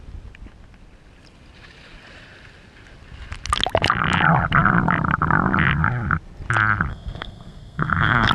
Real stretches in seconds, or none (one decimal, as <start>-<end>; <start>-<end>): 0.0-6.9